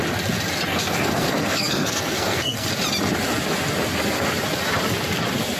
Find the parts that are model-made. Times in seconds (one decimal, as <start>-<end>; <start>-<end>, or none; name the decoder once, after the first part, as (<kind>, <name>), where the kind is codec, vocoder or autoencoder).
0.7-2.7 (codec, SNAC)